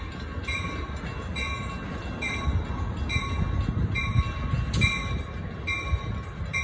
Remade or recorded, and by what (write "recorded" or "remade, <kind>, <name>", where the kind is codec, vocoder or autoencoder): recorded